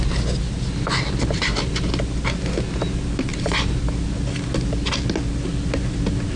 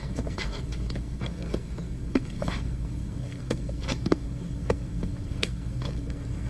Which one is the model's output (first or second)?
second